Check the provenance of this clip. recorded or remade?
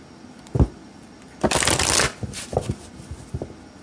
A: recorded